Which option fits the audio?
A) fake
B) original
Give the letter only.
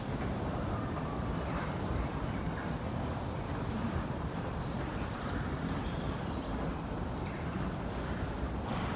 A